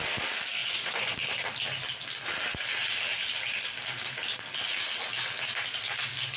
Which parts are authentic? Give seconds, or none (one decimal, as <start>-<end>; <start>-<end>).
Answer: 0.0-0.6; 1.1-6.4